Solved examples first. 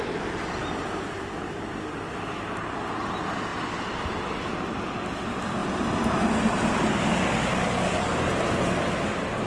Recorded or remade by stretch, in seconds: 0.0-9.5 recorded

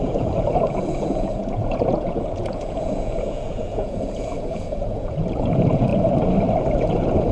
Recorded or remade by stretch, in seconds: 0.0-5.9 remade; 5.9-6.8 recorded; 6.8-7.3 remade

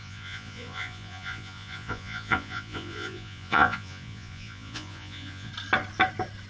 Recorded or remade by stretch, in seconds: 0.0-5.5 remade; 5.5-6.5 recorded

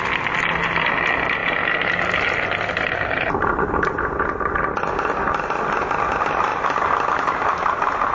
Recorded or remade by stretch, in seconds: 0.0-8.1 recorded

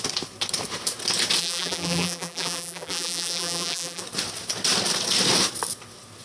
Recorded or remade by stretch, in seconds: 0.0-1.4 recorded; 1.4-4.0 remade; 4.0-6.2 recorded